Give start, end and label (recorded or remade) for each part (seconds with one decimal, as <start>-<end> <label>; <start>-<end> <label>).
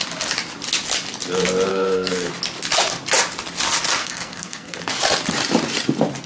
0.0-1.7 recorded; 1.7-2.3 remade; 2.3-4.0 recorded; 4.0-5.0 remade; 5.0-6.3 recorded